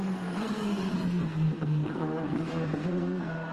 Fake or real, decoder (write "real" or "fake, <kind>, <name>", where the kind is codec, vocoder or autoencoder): fake, codec, SNAC